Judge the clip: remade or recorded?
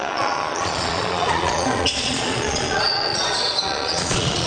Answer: remade